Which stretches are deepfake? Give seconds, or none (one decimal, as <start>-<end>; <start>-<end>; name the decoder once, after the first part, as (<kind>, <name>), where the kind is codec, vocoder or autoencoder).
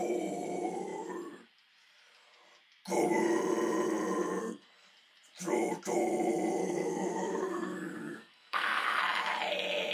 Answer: 4.4-4.9 (codec, SNAC); 6.6-9.0